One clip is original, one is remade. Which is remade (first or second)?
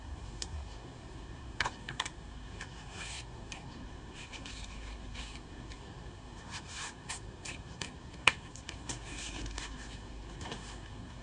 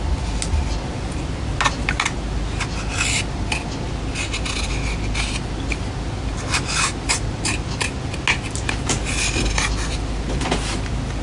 first